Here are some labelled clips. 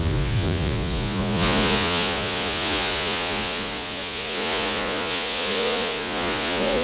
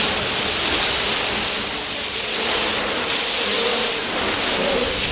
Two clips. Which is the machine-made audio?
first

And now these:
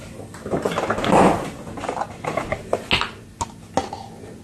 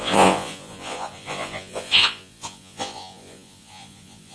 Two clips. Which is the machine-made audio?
second